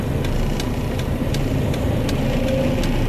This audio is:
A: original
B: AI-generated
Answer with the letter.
A